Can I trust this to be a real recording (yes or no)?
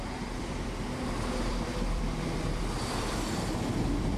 no